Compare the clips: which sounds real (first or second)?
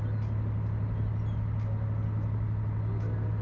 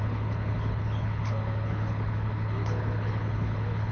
first